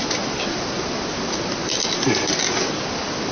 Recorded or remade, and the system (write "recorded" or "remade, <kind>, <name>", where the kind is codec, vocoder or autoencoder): recorded